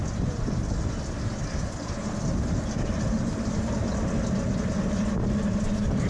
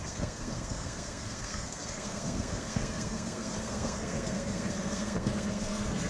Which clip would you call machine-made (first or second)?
second